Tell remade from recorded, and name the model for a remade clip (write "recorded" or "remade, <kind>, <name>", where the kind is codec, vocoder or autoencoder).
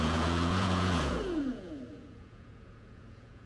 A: remade, vocoder, Vocos